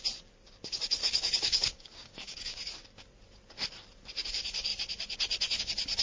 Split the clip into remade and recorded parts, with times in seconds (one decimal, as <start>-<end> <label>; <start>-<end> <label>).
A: 0.0-1.0 recorded; 1.0-2.7 remade; 2.7-6.0 recorded

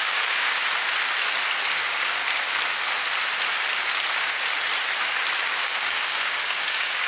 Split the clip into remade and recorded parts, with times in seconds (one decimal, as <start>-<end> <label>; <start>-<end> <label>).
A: 0.0-0.6 remade; 0.6-1.8 recorded; 1.8-2.2 remade; 2.2-5.5 recorded; 5.5-7.1 remade

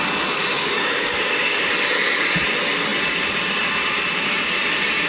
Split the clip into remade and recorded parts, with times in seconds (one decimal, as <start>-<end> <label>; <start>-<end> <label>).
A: 0.0-0.6 recorded; 0.6-1.7 remade; 1.7-5.1 recorded

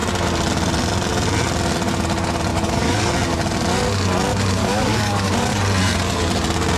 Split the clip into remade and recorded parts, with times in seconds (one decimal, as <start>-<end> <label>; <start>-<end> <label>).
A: 0.0-2.5 recorded; 2.5-3.1 remade; 3.1-4.6 recorded; 4.6-5.6 remade; 5.6-6.8 recorded

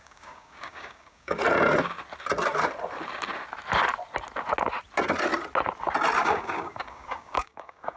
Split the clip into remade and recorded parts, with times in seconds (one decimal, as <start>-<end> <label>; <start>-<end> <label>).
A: 0.0-1.4 remade; 1.4-6.2 recorded; 6.2-8.0 remade